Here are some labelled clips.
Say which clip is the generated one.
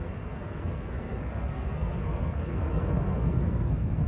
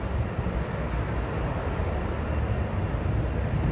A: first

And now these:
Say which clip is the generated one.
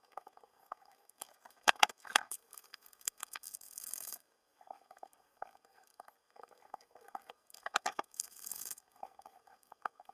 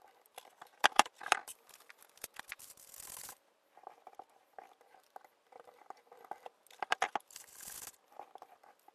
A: first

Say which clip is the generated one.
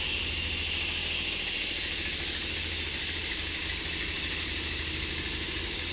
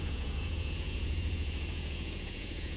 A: second